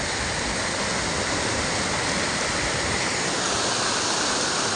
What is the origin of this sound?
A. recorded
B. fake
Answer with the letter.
A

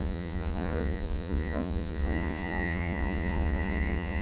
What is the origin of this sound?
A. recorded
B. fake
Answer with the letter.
B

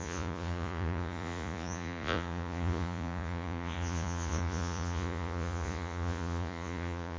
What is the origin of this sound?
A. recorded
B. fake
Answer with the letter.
B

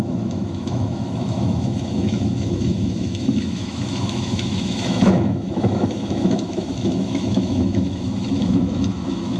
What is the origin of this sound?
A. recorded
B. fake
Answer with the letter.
B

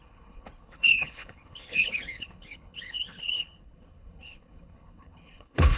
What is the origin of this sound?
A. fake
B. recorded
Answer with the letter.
A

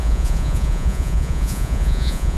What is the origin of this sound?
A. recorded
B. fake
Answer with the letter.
B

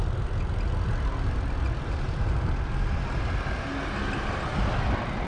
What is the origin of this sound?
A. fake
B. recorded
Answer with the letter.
B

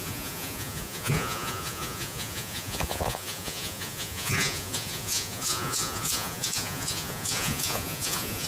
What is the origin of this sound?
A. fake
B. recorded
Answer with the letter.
A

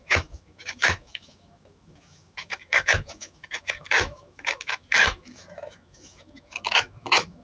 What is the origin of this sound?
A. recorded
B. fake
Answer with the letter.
B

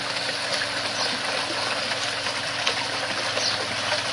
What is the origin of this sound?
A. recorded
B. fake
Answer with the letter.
A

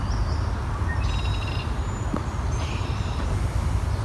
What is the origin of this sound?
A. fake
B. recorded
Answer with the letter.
B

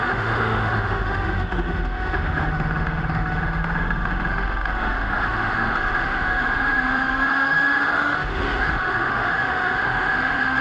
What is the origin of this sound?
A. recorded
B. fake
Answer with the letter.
B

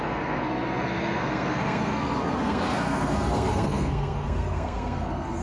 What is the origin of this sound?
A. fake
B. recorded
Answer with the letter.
A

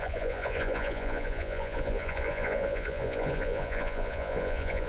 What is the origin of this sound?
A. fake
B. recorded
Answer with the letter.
A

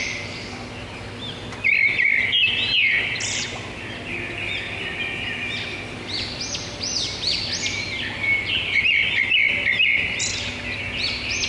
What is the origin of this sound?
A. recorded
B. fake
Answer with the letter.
A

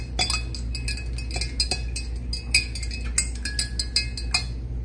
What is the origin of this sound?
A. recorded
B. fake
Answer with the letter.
A